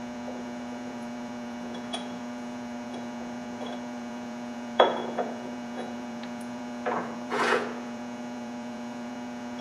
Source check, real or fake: fake